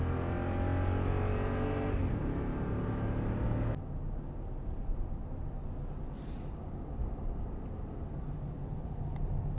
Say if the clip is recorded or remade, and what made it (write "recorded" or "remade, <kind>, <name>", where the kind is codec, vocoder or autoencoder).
recorded